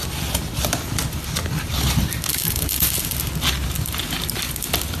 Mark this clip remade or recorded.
recorded